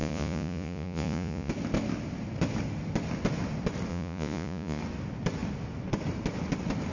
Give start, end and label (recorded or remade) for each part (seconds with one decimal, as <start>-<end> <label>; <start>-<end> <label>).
0.0-1.5 remade; 1.5-3.9 recorded; 3.9-4.8 remade; 4.8-6.9 recorded